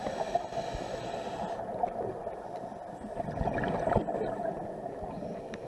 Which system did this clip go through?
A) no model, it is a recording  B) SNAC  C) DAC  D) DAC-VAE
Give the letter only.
A